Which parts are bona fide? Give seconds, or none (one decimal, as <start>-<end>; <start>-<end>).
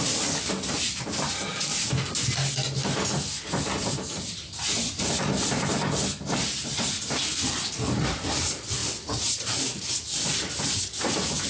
0.0-11.5